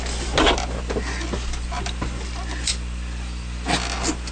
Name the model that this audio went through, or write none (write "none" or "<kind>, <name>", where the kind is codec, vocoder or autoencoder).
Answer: none